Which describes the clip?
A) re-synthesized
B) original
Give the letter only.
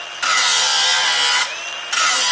B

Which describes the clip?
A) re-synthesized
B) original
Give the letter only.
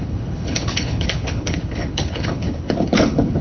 A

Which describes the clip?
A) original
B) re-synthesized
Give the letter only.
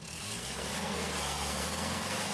B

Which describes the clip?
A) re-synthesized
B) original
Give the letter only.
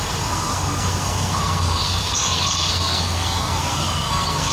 A